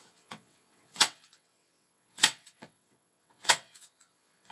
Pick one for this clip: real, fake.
fake